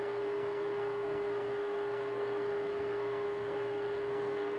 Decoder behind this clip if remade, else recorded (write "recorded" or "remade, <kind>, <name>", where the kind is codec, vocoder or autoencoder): remade, codec, SNAC